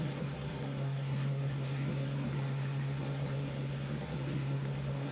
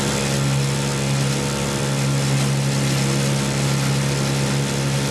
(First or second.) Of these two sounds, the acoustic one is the second